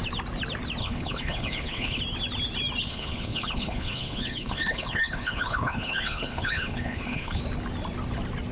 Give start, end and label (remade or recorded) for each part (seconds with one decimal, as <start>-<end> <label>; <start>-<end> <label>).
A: 0.0-0.8 recorded; 0.8-2.0 remade; 2.0-2.9 recorded; 2.9-7.4 remade; 7.4-8.5 recorded